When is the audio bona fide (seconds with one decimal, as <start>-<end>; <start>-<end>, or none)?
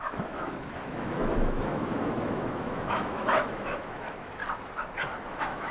4.4-5.3